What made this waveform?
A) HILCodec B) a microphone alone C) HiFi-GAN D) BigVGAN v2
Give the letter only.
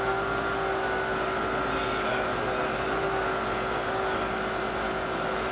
B